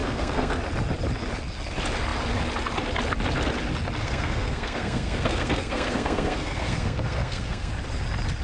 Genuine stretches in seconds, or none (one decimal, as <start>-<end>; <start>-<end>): 0.6-4.0; 7.7-8.4